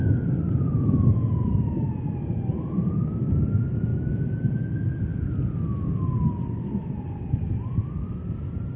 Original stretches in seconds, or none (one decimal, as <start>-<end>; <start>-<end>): 0.0-8.8